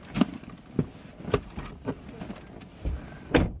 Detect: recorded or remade recorded